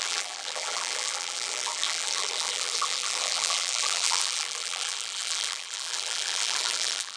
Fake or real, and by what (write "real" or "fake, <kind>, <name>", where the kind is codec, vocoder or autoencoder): fake, vocoder, BigVGAN v2